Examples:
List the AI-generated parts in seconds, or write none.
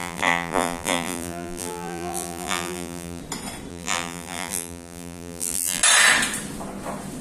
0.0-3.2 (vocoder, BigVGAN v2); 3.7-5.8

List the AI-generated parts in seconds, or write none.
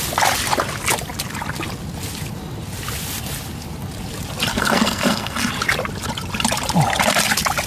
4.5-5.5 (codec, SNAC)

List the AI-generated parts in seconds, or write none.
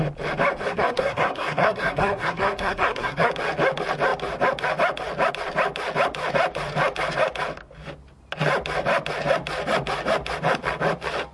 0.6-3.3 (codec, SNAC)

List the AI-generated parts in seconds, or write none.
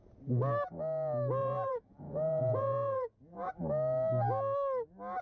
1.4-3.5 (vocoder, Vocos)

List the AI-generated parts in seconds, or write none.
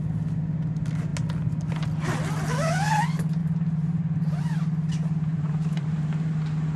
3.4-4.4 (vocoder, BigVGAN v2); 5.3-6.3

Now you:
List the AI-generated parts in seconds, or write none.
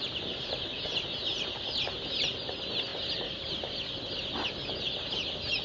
none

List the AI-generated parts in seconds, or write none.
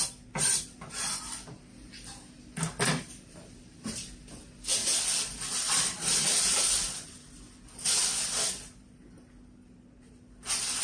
none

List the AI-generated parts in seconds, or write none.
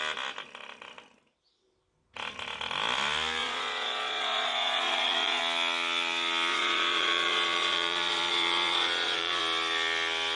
3.4-5.4 (vocoder, Vocos); 6.5-9.4